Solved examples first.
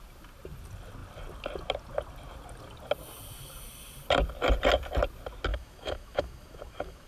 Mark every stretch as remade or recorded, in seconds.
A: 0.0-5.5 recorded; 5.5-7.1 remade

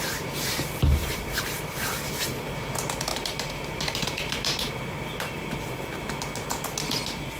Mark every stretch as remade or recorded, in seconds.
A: 0.0-1.0 recorded; 1.0-2.1 remade; 2.1-3.1 recorded; 3.1-4.7 remade; 4.7-7.4 recorded

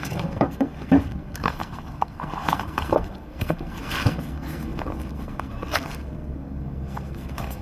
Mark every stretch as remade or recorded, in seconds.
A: 0.0-7.6 remade

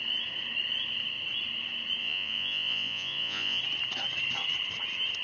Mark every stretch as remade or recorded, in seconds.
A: 0.0-2.0 recorded; 2.0-3.6 remade; 3.6-5.2 recorded